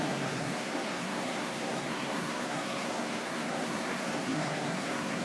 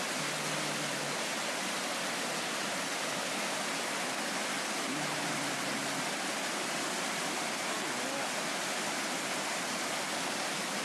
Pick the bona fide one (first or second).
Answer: second